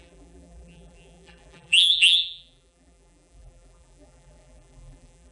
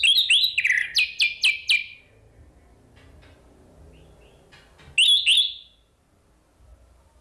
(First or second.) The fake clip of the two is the first